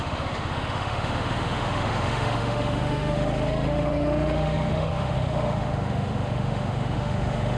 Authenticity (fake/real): fake